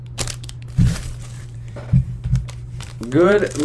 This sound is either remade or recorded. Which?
remade